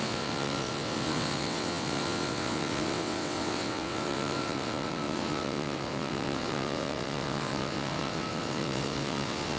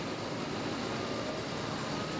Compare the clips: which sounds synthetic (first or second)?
first